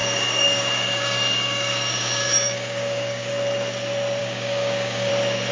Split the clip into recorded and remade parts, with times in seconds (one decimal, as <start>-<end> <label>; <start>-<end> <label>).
0.0-3.3 remade; 3.3-4.2 recorded; 4.2-5.1 remade; 5.1-5.5 recorded